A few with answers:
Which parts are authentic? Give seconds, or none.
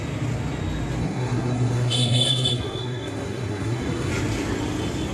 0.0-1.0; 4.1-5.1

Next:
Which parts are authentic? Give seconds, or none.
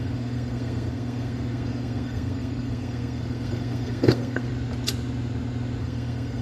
4.5-5.8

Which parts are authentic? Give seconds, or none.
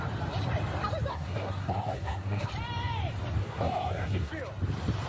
0.0-1.1; 2.5-3.4; 4.3-5.1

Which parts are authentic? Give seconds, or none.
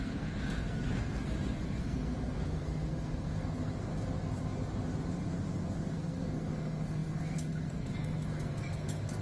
3.9-5.9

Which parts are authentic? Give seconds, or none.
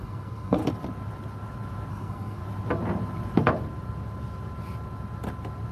0.6-1.9; 2.4-5.7